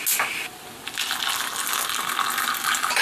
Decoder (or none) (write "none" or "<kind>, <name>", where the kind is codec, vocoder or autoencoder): none